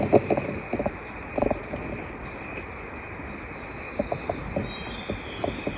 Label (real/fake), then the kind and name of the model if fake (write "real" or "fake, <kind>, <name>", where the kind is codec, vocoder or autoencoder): real